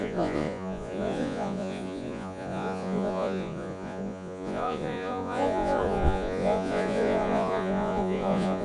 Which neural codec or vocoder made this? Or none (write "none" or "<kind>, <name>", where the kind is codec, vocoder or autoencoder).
vocoder, Vocos